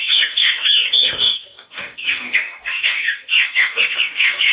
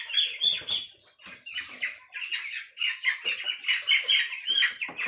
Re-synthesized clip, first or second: first